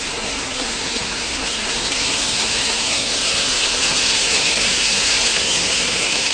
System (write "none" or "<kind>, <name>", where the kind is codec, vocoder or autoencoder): codec, SNAC